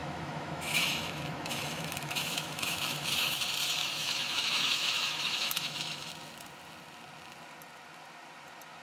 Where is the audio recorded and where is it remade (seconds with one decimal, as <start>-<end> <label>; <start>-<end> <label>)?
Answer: 0.0-3.4 remade; 3.4-3.8 recorded; 3.8-6.1 remade; 6.1-8.8 recorded